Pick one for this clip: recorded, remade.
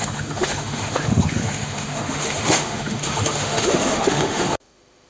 remade